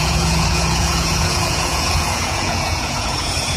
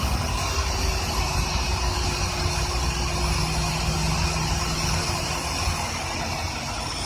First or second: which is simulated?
first